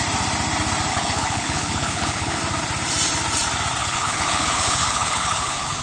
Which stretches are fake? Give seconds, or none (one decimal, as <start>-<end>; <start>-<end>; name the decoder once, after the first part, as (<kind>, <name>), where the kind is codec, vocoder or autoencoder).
0.9-2.4 (codec, HILCodec); 3.8-5.8